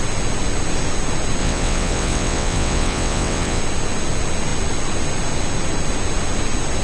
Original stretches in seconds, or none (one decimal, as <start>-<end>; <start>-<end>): 0.0-1.4; 3.6-6.8